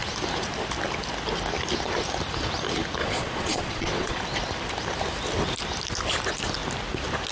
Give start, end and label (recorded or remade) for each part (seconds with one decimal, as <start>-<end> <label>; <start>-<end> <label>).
0.0-3.0 recorded; 3.0-4.2 remade; 4.2-7.3 recorded